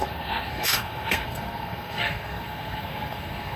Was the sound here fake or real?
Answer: fake